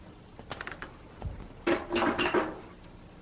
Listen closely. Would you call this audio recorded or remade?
recorded